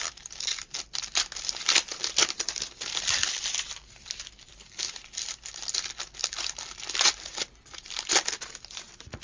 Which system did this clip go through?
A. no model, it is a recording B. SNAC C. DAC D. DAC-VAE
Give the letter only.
A